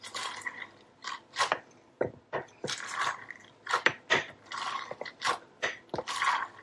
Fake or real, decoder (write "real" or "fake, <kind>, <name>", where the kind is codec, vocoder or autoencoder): fake, vocoder, BigVGAN v2